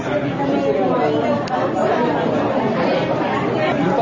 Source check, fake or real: real